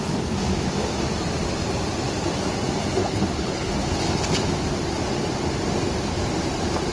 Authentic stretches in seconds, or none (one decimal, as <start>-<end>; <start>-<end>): 0.0-3.0; 3.7-6.9

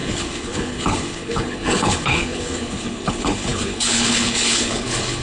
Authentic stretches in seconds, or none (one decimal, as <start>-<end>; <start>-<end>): none